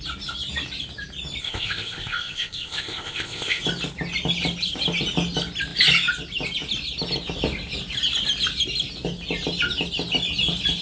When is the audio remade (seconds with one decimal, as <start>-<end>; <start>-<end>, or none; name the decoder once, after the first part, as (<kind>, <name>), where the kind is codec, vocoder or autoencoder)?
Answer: 1.4-3.6 (codec, ZipCodec)